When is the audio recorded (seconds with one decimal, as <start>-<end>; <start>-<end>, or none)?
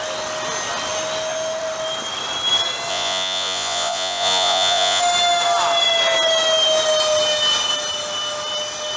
0.0-2.9; 5.0-9.0